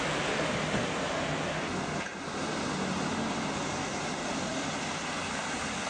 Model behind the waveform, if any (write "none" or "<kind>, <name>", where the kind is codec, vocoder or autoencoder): none